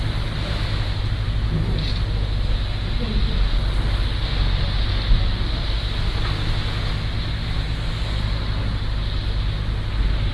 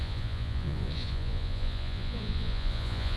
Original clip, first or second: first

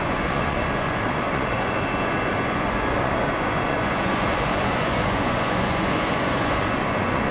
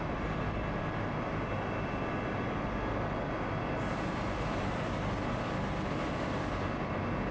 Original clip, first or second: second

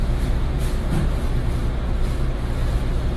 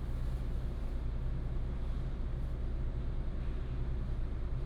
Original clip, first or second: second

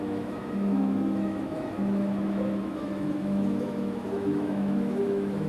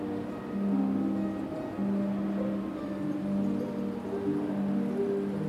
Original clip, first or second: second